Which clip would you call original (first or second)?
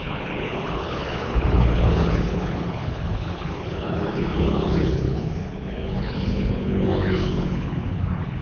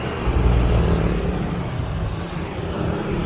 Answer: second